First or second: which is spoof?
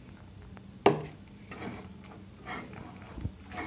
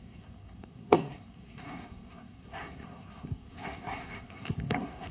second